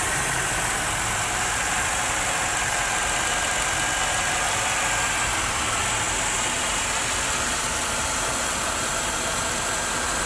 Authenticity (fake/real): real